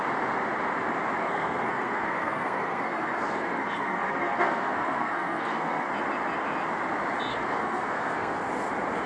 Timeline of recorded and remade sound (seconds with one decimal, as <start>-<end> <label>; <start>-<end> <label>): 0.0-1.2 recorded; 1.2-5.9 remade; 5.9-7.3 recorded; 7.3-8.5 remade; 8.5-9.1 recorded